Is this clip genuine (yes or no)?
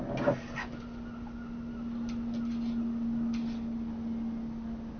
yes